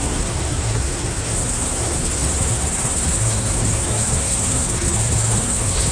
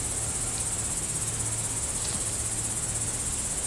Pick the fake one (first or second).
first